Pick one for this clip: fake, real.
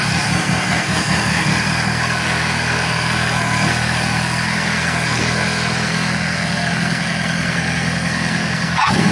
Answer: fake